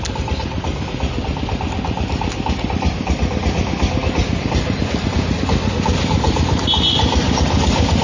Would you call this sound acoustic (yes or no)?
yes